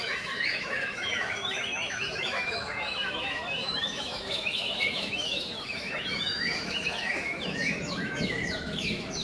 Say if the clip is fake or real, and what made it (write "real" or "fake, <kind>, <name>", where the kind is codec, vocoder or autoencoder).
fake, autoencoder, DAC-VAE